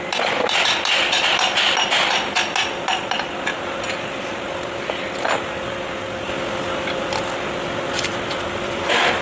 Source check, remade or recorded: recorded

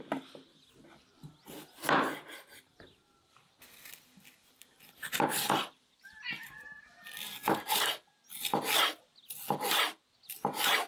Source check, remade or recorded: recorded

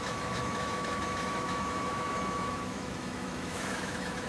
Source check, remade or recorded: remade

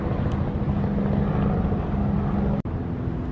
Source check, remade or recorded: recorded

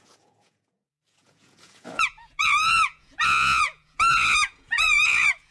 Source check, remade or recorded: remade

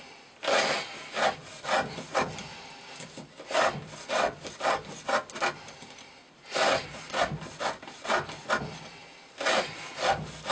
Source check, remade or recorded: recorded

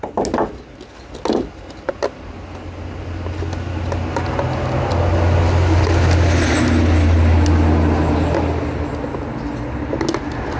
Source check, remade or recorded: recorded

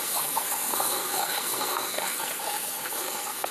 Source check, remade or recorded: remade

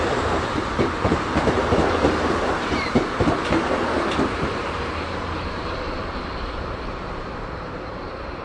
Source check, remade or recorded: remade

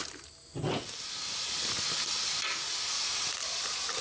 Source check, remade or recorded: recorded